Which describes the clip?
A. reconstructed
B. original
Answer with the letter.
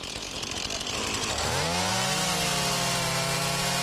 B